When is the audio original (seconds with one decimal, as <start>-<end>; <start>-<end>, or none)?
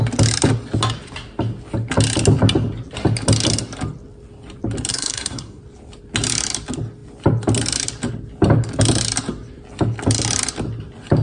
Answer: 0.0-4.9; 5.6-11.2